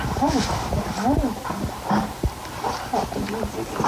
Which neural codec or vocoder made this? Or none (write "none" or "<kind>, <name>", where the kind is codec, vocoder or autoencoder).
none